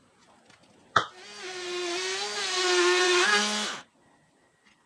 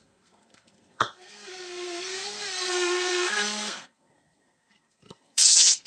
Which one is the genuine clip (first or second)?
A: first